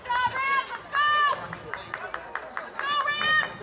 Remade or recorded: recorded